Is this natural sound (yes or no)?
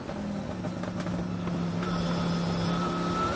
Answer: yes